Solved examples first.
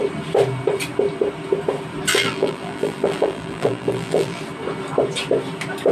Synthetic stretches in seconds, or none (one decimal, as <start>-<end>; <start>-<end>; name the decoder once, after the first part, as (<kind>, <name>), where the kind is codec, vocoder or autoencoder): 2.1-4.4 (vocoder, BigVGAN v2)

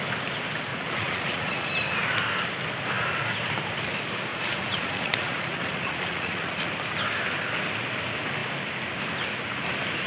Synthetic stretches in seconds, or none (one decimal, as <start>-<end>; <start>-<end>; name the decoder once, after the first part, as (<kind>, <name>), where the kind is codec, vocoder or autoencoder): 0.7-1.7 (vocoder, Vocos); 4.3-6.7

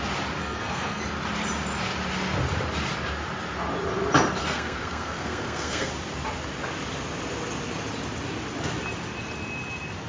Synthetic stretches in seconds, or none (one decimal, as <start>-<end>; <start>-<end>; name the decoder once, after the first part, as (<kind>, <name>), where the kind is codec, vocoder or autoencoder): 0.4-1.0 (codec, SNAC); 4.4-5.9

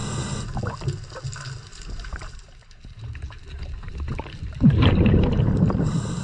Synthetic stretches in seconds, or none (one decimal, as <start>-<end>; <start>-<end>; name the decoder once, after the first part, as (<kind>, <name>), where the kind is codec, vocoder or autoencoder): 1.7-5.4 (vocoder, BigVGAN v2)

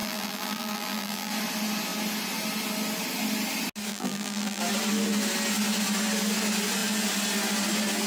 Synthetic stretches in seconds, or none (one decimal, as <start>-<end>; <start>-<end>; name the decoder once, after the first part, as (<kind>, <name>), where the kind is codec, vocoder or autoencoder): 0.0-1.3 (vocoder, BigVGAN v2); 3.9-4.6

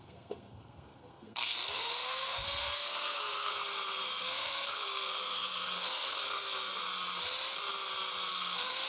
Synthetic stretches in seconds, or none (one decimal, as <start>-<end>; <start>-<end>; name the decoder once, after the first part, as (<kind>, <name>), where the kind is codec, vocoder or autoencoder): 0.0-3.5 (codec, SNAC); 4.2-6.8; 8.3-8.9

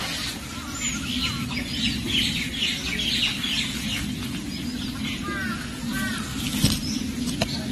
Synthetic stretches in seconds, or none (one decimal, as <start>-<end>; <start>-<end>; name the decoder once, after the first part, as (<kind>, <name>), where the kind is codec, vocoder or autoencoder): 6.3-6.9 (vocoder, BigVGAN v2)

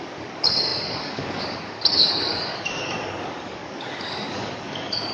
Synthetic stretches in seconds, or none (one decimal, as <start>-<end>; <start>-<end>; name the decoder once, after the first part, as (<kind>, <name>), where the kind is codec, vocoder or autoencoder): 0.0-5.1 (codec, DAC)